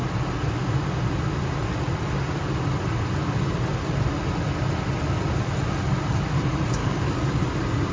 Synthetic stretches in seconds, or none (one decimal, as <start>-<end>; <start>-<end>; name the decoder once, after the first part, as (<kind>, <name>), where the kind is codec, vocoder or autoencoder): 6.8-7.4 (codec, DAC)